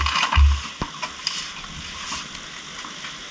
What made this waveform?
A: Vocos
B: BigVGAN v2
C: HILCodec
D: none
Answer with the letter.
D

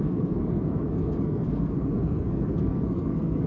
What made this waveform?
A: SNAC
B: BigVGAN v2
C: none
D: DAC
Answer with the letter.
A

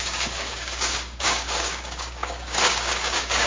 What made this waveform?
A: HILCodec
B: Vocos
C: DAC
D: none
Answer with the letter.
C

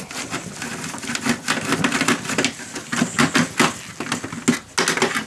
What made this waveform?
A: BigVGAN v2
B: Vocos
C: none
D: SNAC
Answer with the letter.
C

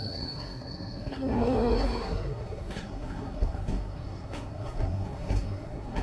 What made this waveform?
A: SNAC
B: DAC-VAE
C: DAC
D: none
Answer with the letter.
A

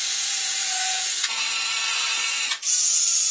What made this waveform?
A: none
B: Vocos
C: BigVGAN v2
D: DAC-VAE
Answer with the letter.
B